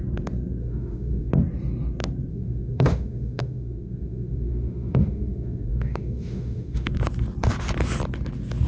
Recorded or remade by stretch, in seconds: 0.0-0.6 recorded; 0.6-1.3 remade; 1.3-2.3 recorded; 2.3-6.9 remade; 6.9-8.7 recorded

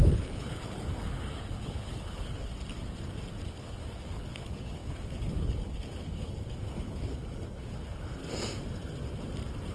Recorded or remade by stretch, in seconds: 0.0-2.5 remade; 2.5-3.6 recorded; 3.6-8.2 remade; 8.2-9.7 recorded

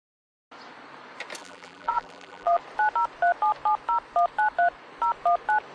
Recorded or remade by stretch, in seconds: 0.0-1.4 recorded; 1.4-2.6 remade; 2.6-5.7 recorded

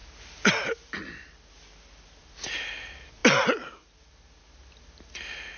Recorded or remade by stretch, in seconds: 0.0-5.6 recorded

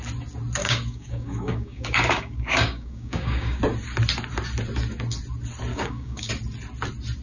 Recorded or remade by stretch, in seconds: 0.0-0.6 recorded; 0.6-3.6 remade; 3.6-5.7 recorded; 5.7-6.3 remade; 6.3-7.2 recorded

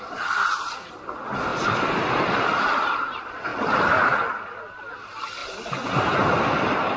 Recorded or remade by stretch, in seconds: 0.0-7.0 recorded

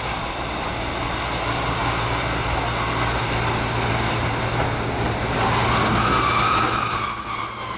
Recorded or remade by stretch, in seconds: 0.0-7.8 recorded